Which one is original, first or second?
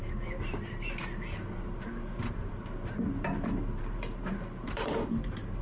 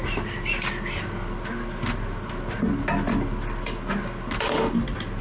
second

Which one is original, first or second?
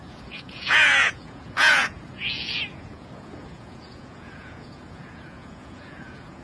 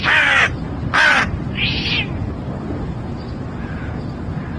second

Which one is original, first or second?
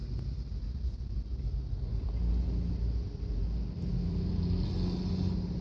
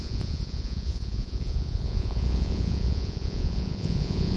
first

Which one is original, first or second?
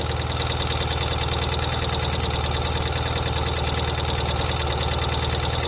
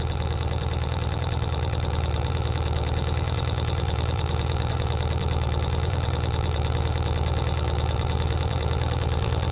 first